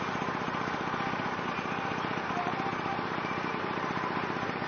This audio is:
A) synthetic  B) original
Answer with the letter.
A